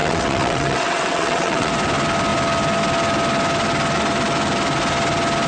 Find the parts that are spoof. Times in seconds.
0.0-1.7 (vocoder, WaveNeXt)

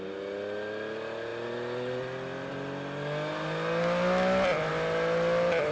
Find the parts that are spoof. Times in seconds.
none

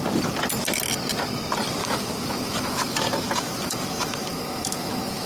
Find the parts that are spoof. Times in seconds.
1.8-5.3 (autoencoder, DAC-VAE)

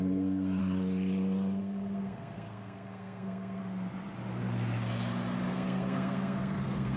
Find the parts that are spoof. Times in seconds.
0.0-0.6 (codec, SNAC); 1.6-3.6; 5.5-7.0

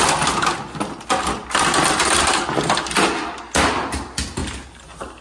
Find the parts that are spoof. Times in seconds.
none